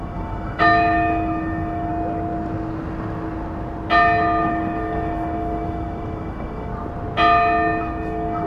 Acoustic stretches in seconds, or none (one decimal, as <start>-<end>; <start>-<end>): 1.9-4.4; 6.7-7.8